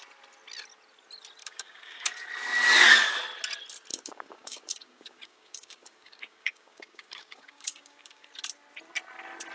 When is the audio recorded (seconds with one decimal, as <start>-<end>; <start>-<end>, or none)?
0.0-1.4; 2.3-3.9; 8.3-9.5